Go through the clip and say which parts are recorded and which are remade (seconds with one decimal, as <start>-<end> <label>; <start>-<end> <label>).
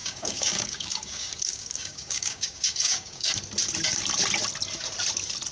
0.0-3.3 remade; 3.3-5.5 recorded